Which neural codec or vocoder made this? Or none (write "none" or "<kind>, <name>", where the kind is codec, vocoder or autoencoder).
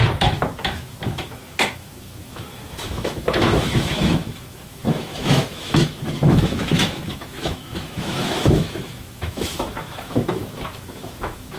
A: autoencoder, DAC-VAE